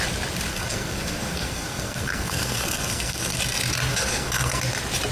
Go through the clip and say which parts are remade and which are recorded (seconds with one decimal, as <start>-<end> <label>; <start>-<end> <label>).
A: 0.0-0.5 recorded; 0.5-3.4 remade; 3.4-3.9 recorded; 3.9-4.6 remade; 4.6-5.1 recorded